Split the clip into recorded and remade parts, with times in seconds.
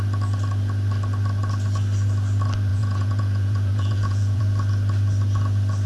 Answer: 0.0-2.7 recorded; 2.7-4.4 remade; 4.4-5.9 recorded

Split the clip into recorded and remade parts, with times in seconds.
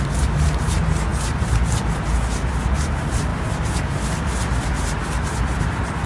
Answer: 0.0-6.1 recorded